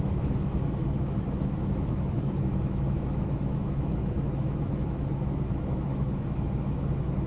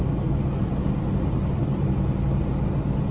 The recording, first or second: second